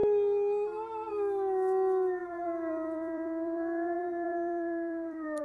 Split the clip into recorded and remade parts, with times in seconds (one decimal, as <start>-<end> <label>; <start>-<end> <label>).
0.0-2.2 recorded; 2.2-5.4 remade